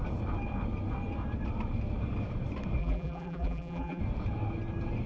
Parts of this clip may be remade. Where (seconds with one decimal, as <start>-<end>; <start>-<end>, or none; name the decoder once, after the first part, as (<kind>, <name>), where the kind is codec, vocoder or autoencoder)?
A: 2.8-4.0 (vocoder, BigVGAN v2)